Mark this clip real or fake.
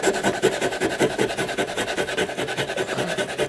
real